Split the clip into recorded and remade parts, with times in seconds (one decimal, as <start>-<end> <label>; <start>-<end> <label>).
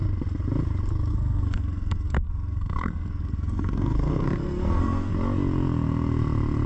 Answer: 0.0-1.1 recorded; 1.1-5.1 remade; 5.1-6.7 recorded